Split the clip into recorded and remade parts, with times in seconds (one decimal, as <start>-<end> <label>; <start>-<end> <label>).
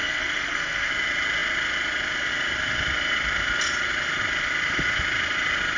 0.0-0.9 remade; 0.9-5.8 recorded